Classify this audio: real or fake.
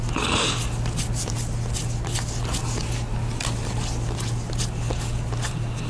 real